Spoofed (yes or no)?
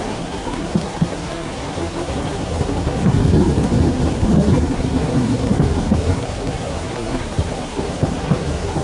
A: yes